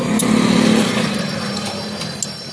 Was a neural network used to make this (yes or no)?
no